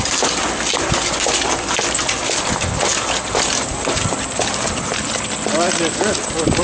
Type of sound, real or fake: real